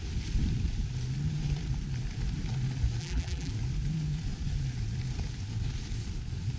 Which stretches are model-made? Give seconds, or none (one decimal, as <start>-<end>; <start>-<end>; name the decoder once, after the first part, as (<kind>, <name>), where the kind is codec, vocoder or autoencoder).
3.0-3.5 (vocoder, BigVGAN v2)